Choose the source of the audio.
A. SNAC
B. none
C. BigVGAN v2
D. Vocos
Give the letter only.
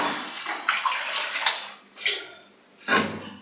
B